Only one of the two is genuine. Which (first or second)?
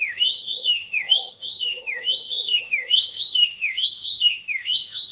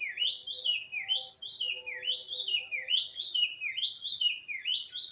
second